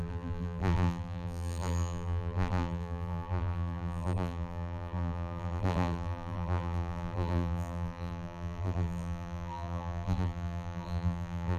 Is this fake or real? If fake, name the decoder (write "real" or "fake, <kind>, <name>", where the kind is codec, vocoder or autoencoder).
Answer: fake, vocoder, BigVGAN v2